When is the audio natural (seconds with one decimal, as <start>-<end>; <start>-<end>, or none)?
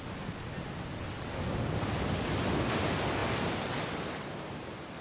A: 0.0-5.0